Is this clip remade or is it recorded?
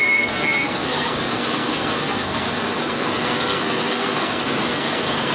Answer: remade